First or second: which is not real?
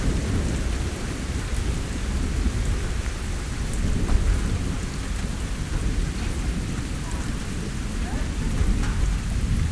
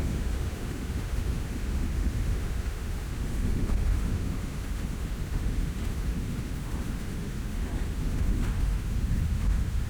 second